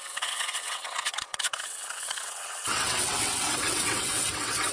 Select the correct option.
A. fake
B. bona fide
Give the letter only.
A